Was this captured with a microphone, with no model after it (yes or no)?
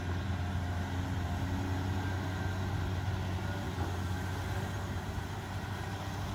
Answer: yes